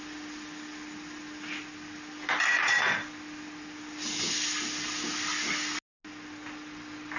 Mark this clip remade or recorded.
recorded